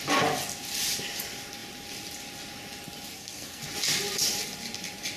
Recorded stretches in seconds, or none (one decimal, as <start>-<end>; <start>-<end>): 0.0-3.1; 3.6-5.2